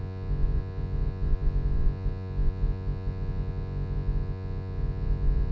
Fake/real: fake